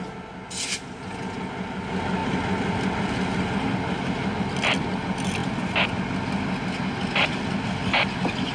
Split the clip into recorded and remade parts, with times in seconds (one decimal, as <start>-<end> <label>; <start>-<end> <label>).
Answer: 0.0-8.5 recorded